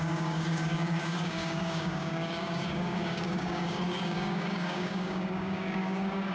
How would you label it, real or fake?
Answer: fake